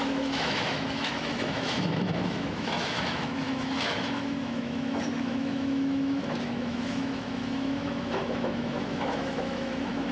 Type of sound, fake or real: fake